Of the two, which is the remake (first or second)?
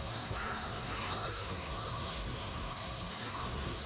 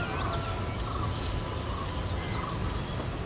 first